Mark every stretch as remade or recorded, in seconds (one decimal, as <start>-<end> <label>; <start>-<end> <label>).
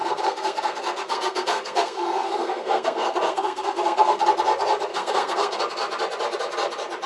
0.0-4.3 remade; 4.3-4.9 recorded; 4.9-5.6 remade; 5.6-7.1 recorded